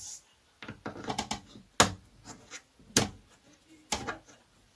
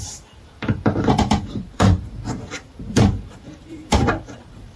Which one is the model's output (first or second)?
second